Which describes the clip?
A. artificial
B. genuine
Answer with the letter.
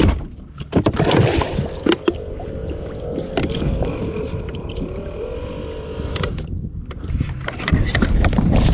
A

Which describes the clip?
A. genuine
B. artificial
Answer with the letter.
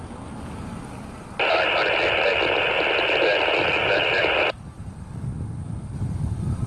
A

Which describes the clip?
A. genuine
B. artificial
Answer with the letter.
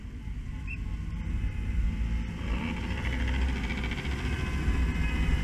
A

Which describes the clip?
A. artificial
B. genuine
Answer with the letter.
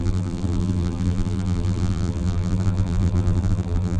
A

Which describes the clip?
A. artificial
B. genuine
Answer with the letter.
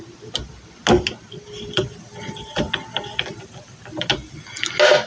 B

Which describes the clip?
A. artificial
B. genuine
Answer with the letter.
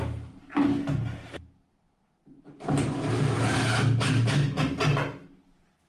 B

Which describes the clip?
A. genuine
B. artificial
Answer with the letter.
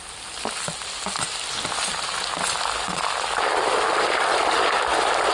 A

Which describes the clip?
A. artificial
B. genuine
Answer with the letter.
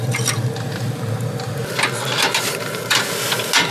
B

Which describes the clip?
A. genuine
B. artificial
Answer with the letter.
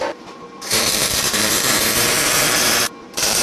B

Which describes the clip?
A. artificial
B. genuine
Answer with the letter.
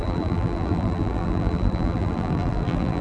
A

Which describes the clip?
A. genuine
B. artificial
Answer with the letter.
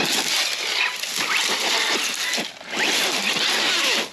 A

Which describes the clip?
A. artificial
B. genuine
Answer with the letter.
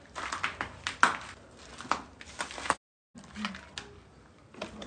B